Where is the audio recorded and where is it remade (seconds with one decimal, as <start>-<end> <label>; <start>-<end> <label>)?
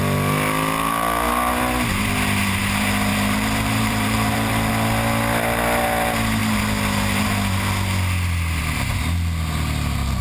0.0-3.1 recorded; 3.1-4.7 remade; 4.7-10.2 recorded